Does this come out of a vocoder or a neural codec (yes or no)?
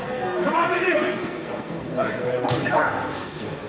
yes